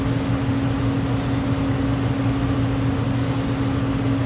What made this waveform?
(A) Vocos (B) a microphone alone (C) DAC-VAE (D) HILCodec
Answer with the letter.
B